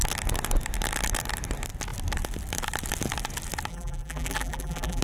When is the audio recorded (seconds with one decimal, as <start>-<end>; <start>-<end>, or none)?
0.0-3.7